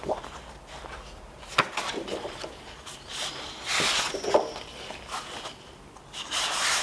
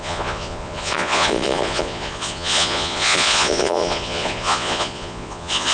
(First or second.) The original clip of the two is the first